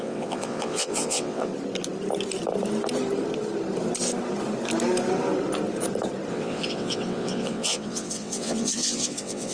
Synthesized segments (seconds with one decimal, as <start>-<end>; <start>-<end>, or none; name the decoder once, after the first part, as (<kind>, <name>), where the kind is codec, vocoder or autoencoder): 0.0-1.5 (vocoder, WaveNeXt); 6.3-9.5